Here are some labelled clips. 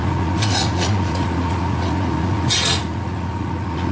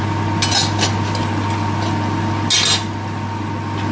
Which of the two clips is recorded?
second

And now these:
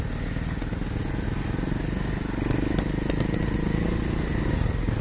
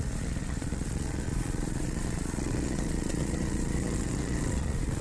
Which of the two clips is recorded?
first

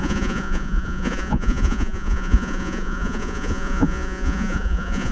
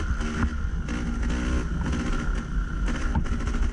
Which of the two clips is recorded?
second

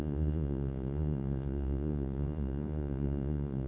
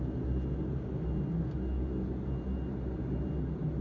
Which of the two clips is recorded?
second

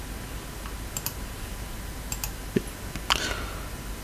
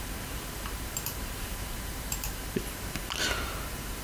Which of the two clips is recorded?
first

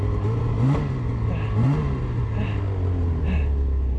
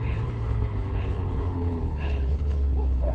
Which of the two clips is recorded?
first